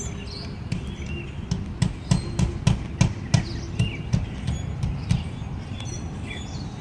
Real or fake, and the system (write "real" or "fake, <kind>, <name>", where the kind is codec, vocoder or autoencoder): real